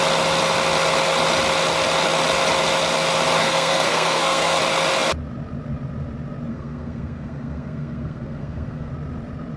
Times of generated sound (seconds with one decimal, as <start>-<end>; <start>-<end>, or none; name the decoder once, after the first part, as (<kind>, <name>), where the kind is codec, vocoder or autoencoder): 3.4-4.6 (codec, SNAC); 6.5-8.9